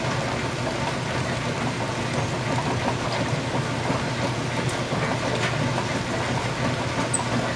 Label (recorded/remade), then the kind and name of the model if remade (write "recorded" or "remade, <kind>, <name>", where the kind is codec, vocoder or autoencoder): recorded